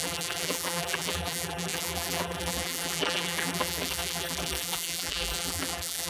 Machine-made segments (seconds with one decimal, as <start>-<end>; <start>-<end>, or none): 0.0-6.1